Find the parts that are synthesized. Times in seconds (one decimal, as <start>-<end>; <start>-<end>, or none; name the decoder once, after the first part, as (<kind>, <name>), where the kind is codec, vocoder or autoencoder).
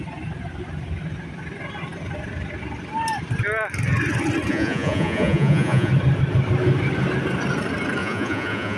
4.5-5.9 (vocoder, Vocos); 8.0-8.8